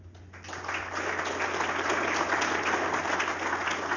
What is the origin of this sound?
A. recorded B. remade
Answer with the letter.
A